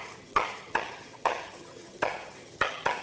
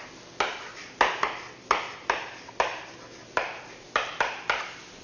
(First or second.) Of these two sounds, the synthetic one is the first